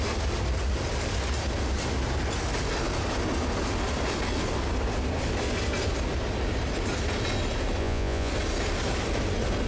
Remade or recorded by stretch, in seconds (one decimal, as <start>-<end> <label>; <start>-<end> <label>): 0.0-7.8 recorded; 7.8-8.3 remade; 8.3-9.7 recorded